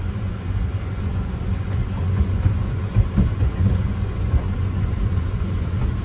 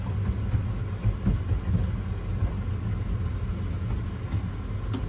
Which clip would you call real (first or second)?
second